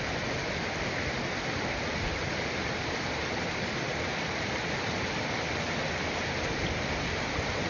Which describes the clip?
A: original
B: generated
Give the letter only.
A